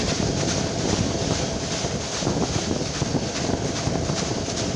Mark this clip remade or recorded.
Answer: recorded